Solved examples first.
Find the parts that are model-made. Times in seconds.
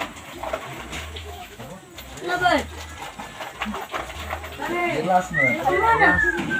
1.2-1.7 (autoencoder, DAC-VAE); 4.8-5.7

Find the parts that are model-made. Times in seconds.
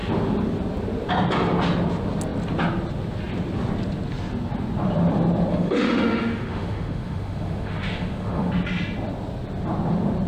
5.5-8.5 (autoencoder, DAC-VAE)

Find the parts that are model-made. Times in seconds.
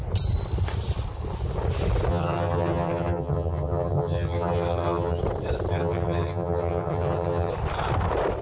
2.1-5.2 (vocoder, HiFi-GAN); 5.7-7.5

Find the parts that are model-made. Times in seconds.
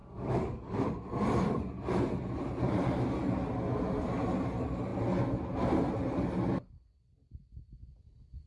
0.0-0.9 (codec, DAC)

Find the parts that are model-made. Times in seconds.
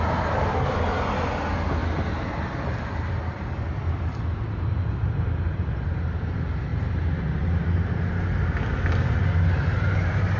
none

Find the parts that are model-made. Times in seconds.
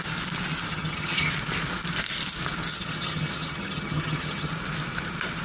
0.7-1.3 (vocoder, HiFi-GAN); 2.7-4.5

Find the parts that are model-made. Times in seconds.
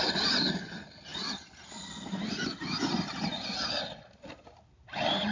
none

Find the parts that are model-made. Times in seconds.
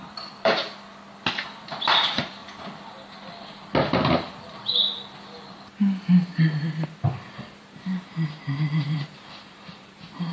0.0-0.6 (vocoder, BigVGAN v2); 1.6-2.4; 7.6-10.3